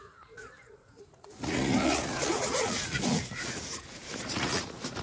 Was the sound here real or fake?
fake